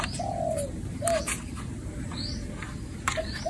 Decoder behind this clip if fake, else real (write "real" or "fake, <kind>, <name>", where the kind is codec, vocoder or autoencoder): real